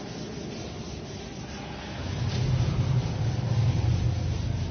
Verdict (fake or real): real